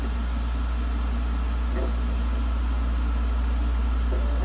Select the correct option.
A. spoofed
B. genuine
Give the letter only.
B